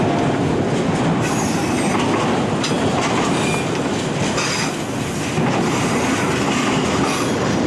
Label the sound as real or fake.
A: real